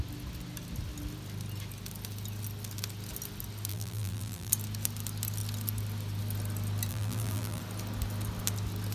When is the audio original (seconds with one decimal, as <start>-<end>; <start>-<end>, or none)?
0.0-3.7; 4.5-6.9; 7.6-8.9